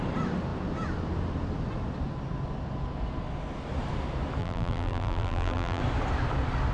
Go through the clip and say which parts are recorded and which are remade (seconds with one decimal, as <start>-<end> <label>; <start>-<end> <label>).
0.0-4.4 recorded; 4.4-5.8 remade; 5.8-6.7 recorded